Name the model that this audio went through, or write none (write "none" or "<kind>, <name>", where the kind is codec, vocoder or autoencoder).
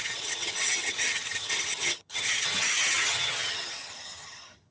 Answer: vocoder, HiFi-GAN